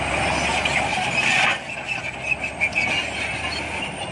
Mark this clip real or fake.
real